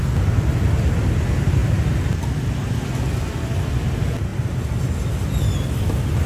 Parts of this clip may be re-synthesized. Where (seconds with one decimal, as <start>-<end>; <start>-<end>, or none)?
4.3-5.0